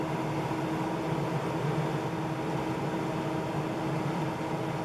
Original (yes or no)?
yes